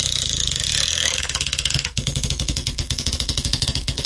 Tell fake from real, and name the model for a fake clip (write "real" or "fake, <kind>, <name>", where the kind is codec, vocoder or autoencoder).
fake, codec, SNAC